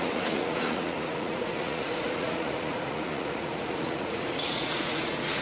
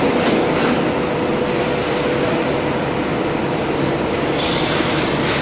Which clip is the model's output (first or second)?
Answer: first